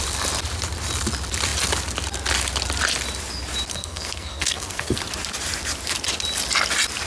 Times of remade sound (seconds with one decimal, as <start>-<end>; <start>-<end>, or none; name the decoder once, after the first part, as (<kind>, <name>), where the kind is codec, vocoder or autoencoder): 3.7-5.0 (codec, SNAC)